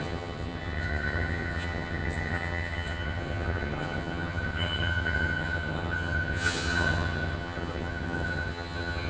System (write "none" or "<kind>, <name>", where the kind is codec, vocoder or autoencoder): vocoder, HiFi-GAN